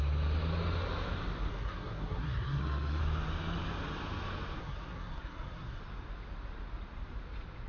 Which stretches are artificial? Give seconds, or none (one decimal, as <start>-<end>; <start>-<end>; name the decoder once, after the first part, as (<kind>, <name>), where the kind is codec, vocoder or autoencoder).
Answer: 1.5-3.0 (codec, SNAC); 4.6-5.8